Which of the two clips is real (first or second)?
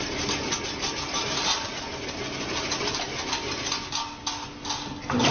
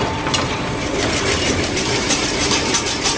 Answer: first